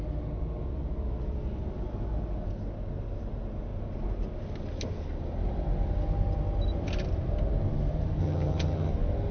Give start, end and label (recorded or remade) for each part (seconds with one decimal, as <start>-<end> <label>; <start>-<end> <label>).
0.0-8.2 recorded; 8.2-8.9 remade; 8.9-9.3 recorded